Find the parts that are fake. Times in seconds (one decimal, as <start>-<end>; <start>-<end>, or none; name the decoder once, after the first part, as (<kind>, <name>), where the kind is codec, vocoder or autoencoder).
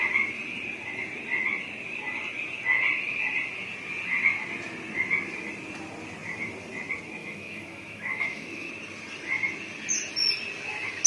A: 7.2-8.7 (autoencoder, DAC-VAE)